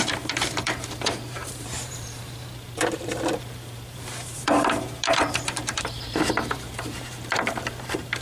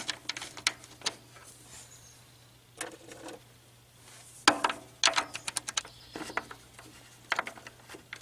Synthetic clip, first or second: first